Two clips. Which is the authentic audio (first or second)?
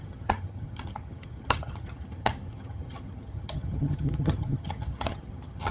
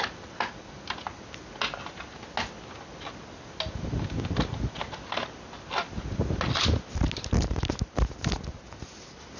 second